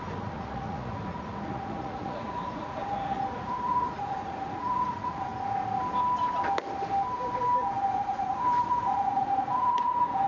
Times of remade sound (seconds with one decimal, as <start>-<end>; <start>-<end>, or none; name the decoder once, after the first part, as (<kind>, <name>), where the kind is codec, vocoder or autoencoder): 0.0-5.3 (vocoder, Vocos); 7.9-10.3